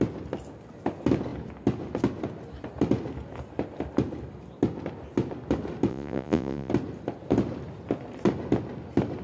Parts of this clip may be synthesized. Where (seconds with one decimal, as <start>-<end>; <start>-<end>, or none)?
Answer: 5.9-6.7